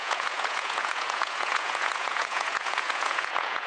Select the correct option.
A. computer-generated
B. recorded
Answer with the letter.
A